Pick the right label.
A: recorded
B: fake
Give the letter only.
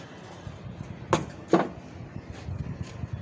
A